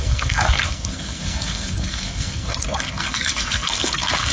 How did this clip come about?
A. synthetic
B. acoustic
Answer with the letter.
A